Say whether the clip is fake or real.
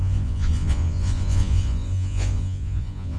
fake